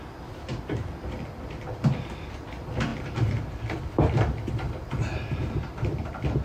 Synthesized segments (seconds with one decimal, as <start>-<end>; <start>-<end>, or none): 0.0-6.4